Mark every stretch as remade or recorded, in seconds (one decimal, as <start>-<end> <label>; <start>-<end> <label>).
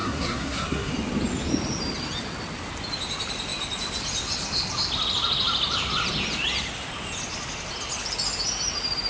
0.0-0.9 remade; 0.9-9.1 recorded